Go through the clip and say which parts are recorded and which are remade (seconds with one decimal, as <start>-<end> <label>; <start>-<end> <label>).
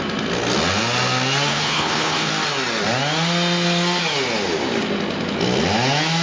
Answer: 0.0-1.5 recorded; 1.5-2.3 remade; 2.3-6.2 recorded